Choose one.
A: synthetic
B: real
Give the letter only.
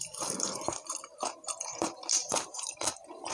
A